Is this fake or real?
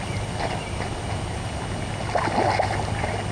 real